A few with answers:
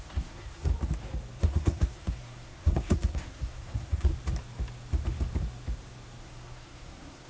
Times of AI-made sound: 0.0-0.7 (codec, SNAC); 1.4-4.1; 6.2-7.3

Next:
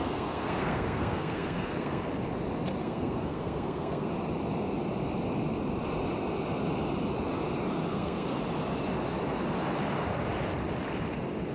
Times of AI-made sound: 0.0-2.0 (codec, SNAC); 2.8-4.1; 7.9-8.4

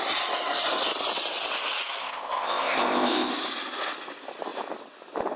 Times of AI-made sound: 2.0-3.3 (codec, ZipCodec)